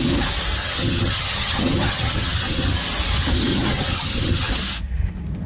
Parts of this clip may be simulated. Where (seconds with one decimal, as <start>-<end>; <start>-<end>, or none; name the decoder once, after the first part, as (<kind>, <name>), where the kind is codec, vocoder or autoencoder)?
0.6-2.8 (vocoder, HiFi-GAN); 3.5-4.5